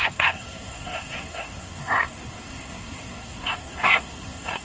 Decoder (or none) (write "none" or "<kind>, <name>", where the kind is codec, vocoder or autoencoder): codec, SNAC